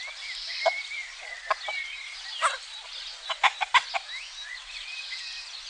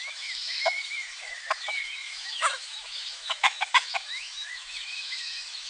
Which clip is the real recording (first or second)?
first